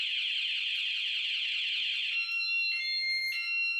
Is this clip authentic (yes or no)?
yes